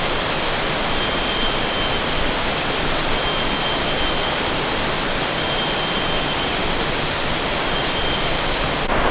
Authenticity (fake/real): real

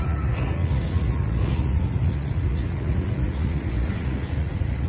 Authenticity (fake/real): fake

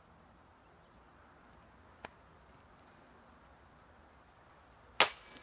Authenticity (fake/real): real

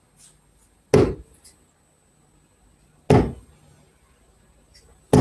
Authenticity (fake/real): real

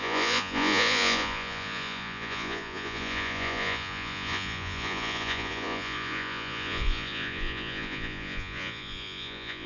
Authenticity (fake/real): fake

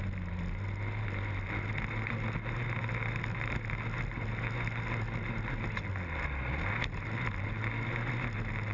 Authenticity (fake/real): real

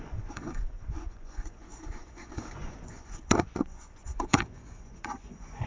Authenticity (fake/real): fake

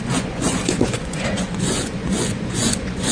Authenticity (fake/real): fake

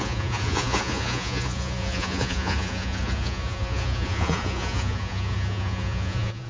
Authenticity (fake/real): fake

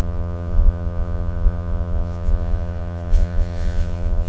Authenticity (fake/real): fake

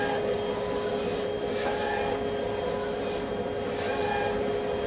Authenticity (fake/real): real